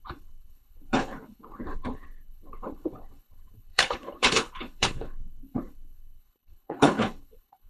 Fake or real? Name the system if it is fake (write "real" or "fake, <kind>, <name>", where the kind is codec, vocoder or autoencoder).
fake, codec, HILCodec